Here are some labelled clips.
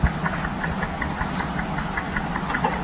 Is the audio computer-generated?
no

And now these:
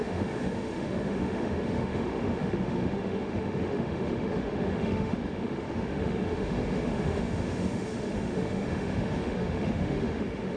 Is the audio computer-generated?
yes